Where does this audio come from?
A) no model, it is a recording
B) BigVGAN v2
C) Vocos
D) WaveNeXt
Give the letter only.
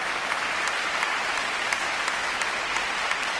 A